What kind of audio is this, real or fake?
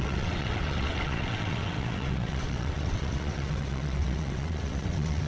fake